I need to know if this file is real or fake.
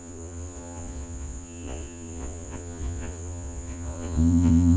fake